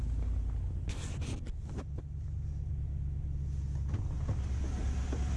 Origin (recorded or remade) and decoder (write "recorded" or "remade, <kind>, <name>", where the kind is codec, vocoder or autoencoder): recorded